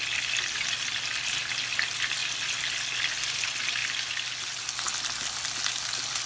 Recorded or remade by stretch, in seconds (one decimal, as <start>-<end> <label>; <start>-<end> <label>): 0.0-6.3 recorded